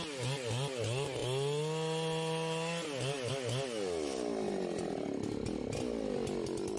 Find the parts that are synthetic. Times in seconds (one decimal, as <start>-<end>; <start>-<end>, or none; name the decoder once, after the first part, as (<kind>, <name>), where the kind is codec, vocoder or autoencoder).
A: none